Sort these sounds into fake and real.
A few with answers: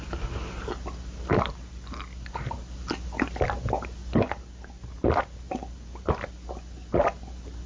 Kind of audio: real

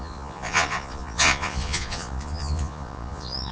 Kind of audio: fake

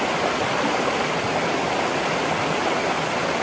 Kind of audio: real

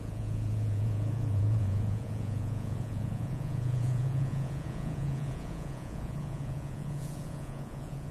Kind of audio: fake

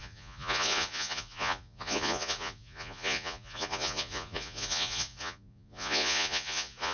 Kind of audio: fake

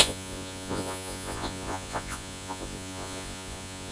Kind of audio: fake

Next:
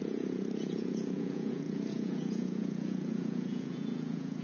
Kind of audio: fake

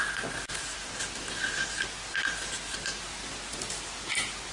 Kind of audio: real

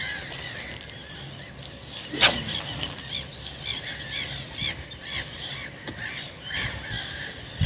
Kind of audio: real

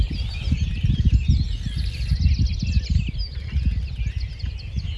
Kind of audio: real